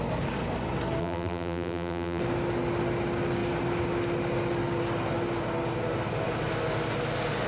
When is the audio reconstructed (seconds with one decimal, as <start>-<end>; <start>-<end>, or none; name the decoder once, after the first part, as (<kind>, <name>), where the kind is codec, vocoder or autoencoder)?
1.0-2.2 (vocoder, BigVGAN v2)